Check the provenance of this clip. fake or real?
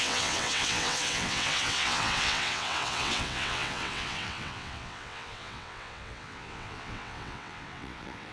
fake